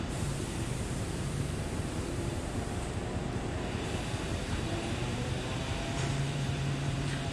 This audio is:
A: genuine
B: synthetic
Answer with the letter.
B